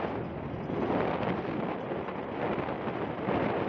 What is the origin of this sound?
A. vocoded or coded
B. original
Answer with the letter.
B